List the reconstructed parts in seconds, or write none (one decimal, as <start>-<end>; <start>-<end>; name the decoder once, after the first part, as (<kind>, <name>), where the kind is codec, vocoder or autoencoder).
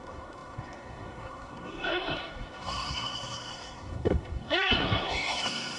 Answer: 0.0-5.8 (codec, SNAC)